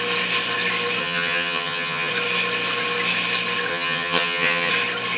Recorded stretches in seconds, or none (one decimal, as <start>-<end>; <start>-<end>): 0.0-1.0; 2.1-3.7; 4.7-5.2